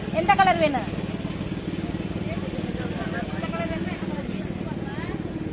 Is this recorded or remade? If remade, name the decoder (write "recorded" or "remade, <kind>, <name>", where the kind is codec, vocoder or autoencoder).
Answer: recorded